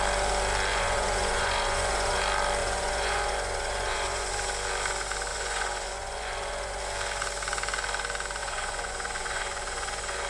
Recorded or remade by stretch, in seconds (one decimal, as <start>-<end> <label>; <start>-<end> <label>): 0.0-0.7 recorded; 0.7-2.2 remade; 2.2-2.6 recorded; 2.6-4.3 remade; 4.3-5.3 recorded; 5.3-6.8 remade; 6.8-8.4 recorded; 8.4-10.3 remade